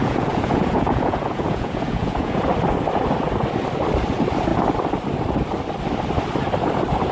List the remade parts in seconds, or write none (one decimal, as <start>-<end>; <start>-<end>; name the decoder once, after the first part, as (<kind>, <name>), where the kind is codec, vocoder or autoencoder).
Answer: 0.0-2.4 (vocoder, Vocos)